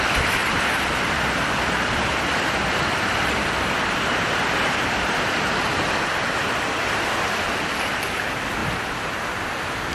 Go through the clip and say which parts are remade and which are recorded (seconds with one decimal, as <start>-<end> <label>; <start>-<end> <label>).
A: 0.0-0.4 recorded; 0.4-5.6 remade; 5.6-9.9 recorded